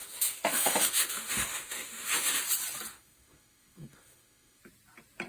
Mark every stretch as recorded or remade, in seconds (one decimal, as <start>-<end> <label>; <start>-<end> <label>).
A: 0.0-2.4 remade; 2.4-2.9 recorded; 2.9-4.6 remade; 4.6-5.3 recorded